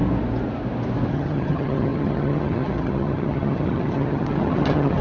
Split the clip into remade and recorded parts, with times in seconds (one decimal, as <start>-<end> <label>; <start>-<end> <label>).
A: 0.0-1.1 recorded; 1.1-5.0 remade

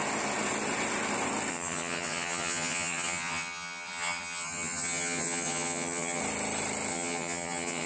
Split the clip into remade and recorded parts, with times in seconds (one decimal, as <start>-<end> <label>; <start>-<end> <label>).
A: 0.0-1.5 recorded; 1.5-6.2 remade; 6.2-6.9 recorded; 6.9-7.9 remade

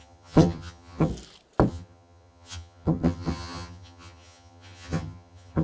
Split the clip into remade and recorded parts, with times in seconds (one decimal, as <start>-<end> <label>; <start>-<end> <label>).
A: 0.0-1.1 remade; 1.1-1.7 recorded; 1.7-5.6 remade

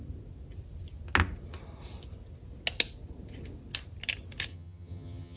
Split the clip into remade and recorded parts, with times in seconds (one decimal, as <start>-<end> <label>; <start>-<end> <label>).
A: 0.0-4.5 recorded; 4.5-5.4 remade

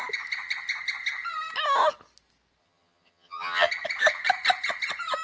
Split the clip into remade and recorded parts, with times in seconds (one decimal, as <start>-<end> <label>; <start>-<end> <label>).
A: 0.0-2.6 recorded; 2.6-3.7 remade; 3.7-5.2 recorded

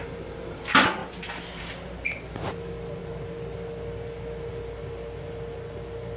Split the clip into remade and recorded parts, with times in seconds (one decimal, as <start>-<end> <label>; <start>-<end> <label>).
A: 0.0-6.2 recorded

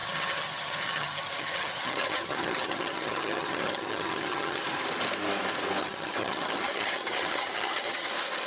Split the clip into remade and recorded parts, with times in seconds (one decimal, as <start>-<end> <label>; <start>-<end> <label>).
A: 0.0-4.6 remade; 4.6-5.8 recorded; 5.8-8.1 remade; 8.1-8.5 recorded